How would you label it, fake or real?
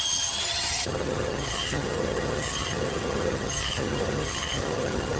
fake